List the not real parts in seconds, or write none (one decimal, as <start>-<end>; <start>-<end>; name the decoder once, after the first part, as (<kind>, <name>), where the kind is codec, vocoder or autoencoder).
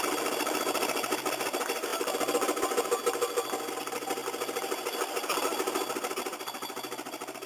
none